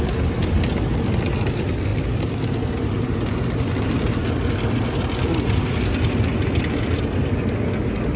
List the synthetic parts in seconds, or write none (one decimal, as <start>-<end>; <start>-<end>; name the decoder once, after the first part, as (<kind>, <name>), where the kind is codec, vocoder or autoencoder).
none

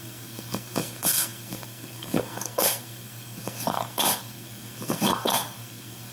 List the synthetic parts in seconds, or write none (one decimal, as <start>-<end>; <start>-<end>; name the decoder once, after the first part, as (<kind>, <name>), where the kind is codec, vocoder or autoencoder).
0.0-6.1 (codec, SNAC)

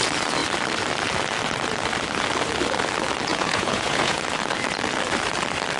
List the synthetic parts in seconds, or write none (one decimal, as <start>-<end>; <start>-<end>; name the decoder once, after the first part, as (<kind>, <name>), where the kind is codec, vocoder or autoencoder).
3.3-4.2 (vocoder, Vocos)